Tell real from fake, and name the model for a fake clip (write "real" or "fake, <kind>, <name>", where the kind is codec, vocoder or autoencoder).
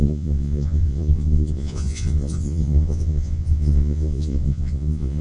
fake, vocoder, Vocos